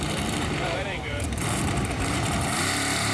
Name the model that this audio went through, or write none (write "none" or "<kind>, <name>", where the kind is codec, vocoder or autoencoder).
vocoder, BigVGAN v2